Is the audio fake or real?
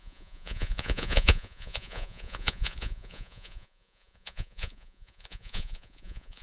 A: fake